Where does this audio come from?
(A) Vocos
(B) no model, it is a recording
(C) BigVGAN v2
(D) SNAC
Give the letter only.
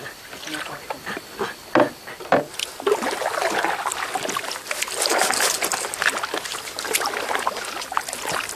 B